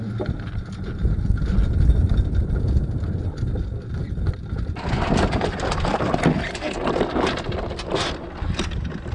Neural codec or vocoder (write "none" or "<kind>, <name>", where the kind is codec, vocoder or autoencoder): none